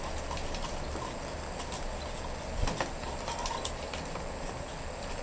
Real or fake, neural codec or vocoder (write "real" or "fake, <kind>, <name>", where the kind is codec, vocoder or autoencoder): real